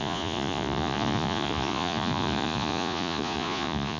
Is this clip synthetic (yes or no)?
yes